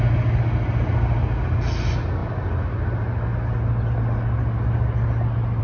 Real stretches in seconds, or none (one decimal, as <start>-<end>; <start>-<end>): 0.0-5.6